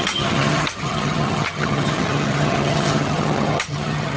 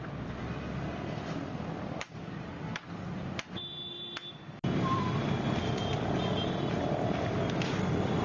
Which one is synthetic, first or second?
first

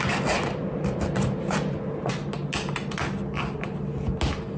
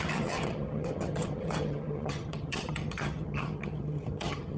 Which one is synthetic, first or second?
second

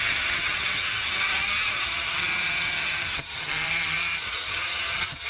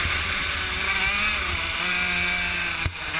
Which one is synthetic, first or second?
first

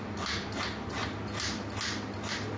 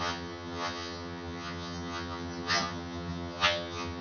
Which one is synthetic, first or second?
second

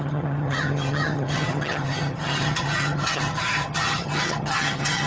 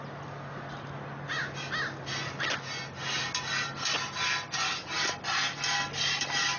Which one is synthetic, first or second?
first